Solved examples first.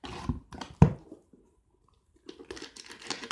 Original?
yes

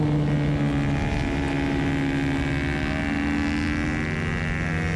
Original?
yes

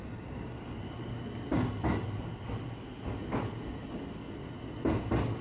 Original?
yes